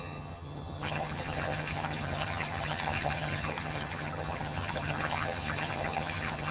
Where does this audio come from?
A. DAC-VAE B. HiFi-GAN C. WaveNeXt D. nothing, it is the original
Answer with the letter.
B